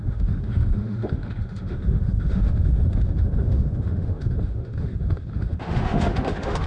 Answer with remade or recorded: remade